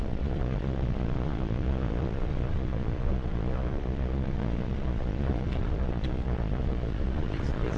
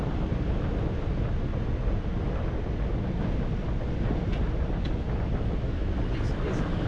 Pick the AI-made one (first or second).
first